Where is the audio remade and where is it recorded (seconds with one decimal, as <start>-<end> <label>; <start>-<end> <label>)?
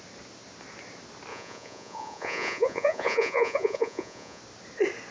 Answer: 0.0-1.3 recorded; 1.3-4.4 remade; 4.4-5.1 recorded